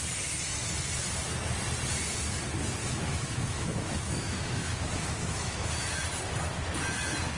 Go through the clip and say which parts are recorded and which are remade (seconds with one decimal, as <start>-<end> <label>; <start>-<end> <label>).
0.0-2.8 recorded; 2.8-5.9 remade; 5.9-7.4 recorded